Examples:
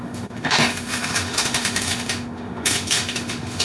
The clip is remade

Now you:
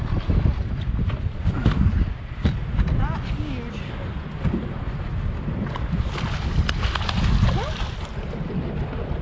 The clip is recorded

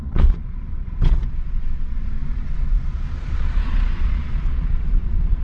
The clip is remade